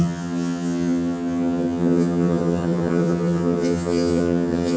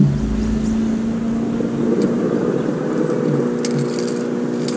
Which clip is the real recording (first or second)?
second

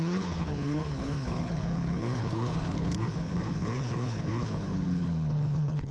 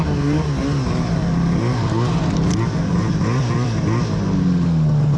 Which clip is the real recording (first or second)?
second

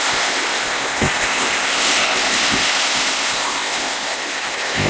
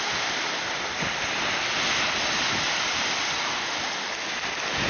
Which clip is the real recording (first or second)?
second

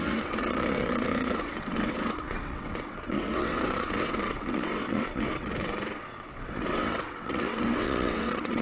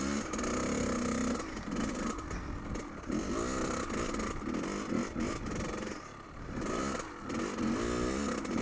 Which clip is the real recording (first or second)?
second